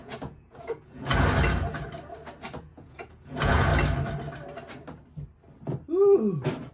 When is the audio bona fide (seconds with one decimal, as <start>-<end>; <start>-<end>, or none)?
1.1-2.6; 3.7-6.7

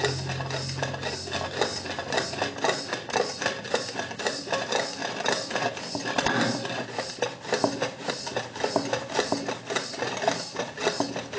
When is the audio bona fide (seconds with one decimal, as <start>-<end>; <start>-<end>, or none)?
0.0-11.4

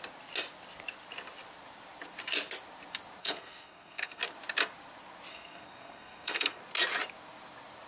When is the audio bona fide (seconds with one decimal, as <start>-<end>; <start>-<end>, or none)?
0.0-3.2; 4.2-5.3; 6.6-7.9

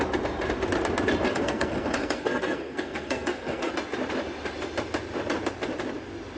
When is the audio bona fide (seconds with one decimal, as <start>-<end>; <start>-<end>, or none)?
0.0-1.3; 3.7-6.4

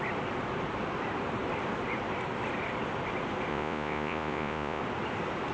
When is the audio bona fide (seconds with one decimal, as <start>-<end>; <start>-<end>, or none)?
0.0-3.5; 4.8-5.5

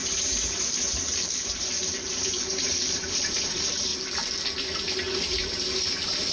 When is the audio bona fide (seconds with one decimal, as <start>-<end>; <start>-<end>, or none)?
3.9-5.1

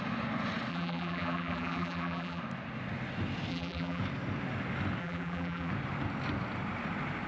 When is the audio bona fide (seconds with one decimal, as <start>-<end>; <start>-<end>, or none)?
0.0-0.7; 2.4-3.5; 4.0-5.0; 5.7-7.3